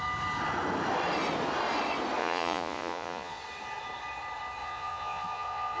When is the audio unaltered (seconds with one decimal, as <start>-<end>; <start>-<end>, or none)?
0.0-2.2; 3.4-4.6